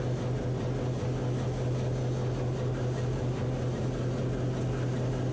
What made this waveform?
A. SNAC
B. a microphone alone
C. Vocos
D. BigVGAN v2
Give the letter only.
B